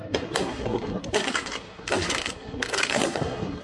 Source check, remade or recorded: remade